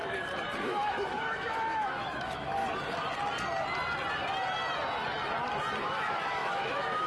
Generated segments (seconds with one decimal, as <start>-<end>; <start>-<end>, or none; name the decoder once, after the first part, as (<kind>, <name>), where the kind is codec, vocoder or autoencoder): 0.6-2.6 (autoencoder, DAC-VAE); 5.8-7.1